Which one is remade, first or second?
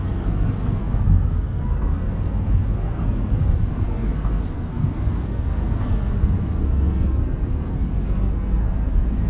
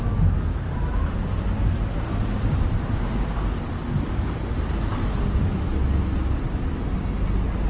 first